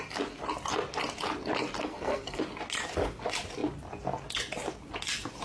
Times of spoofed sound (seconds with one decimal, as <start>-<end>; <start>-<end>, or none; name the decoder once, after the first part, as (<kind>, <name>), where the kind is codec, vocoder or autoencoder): 1.8-2.4 (codec, SNAC)